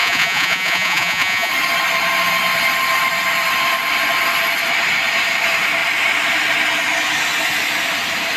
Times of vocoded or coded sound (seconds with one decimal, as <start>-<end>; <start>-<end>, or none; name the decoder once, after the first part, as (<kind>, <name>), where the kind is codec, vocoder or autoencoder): 0.0-1.5 (vocoder, Vocos)